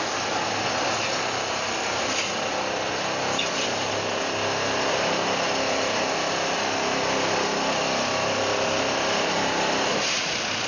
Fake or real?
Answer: real